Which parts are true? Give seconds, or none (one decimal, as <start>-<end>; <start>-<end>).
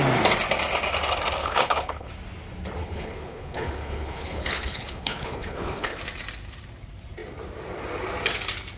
0.0-1.4; 2.1-2.8; 6.0-8.8